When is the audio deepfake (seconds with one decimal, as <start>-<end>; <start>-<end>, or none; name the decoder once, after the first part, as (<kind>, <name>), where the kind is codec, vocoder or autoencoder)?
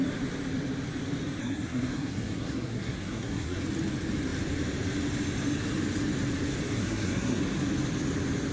1.4-3.6 (codec, SNAC); 6.8-7.4